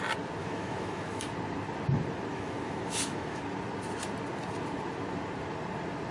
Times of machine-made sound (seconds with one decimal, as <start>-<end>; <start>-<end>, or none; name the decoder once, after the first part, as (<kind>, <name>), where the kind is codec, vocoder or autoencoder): 0.4-1.2 (autoencoder, DAC-VAE); 2.3-3.4